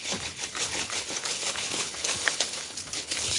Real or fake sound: fake